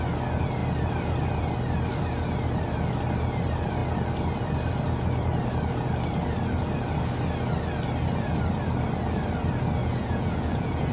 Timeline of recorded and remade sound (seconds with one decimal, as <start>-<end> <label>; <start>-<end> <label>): 0.0-9.8 recorded; 9.8-10.9 remade